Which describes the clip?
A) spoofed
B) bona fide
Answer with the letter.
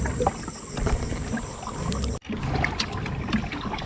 B